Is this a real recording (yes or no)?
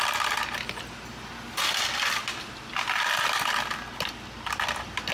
yes